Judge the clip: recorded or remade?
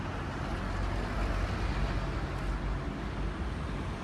recorded